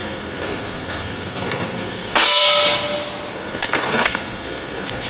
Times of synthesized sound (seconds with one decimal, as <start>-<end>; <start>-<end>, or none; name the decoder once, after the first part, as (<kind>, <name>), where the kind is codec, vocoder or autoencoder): 0.0-2.4 (codec, SNAC); 3.3-5.1